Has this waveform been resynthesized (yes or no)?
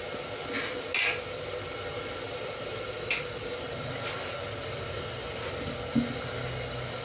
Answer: no